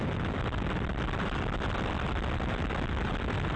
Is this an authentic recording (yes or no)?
no